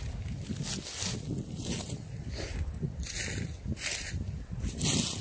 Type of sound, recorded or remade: recorded